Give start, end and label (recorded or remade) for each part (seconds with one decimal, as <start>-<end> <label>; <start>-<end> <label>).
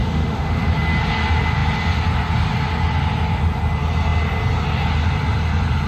0.0-0.7 remade; 0.7-5.9 recorded